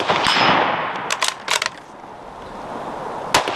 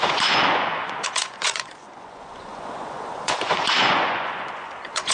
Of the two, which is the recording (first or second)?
first